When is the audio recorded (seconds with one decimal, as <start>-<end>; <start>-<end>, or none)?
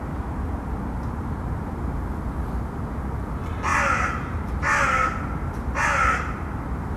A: 0.0-7.0